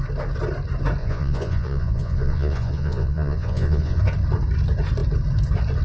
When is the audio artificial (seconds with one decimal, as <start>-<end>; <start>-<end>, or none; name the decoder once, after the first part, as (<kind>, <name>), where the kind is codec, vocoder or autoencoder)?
1.0-4.0 (vocoder, Vocos)